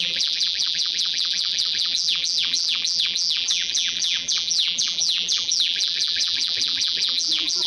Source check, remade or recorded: remade